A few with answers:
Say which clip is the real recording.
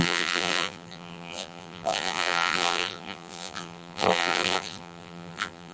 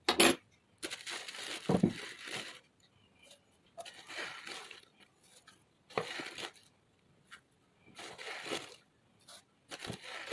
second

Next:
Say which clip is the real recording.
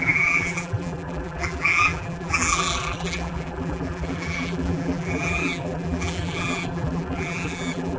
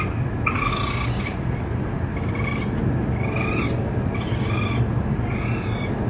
second